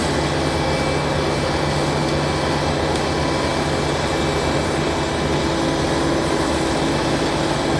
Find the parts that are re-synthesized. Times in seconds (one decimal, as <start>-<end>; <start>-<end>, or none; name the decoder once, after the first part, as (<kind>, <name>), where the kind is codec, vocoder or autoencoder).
none